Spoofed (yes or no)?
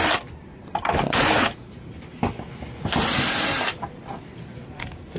no